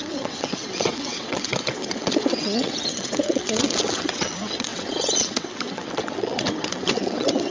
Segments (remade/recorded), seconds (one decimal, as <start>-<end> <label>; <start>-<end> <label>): 0.0-7.5 remade